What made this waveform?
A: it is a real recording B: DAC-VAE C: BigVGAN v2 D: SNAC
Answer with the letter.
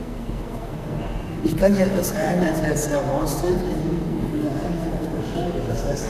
D